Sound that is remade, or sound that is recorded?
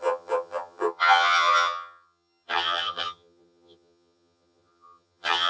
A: remade